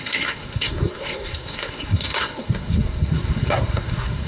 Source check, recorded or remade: remade